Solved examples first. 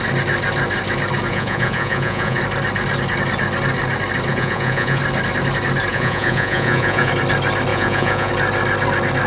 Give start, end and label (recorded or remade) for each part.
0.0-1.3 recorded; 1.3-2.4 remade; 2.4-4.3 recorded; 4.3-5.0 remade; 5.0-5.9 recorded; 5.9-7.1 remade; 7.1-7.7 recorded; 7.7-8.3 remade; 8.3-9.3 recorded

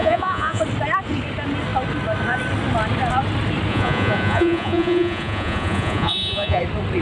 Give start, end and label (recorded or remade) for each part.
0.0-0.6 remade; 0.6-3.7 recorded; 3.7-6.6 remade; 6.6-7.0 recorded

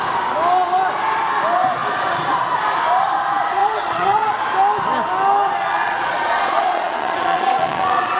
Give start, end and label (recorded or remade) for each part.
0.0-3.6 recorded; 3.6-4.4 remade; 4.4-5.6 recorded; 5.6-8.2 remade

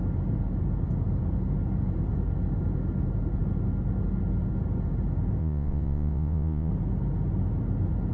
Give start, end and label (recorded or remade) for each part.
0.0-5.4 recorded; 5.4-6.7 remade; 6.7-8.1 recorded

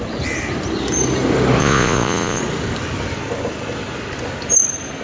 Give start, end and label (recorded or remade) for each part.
0.0-1.6 recorded; 1.6-2.4 remade; 2.4-5.0 recorded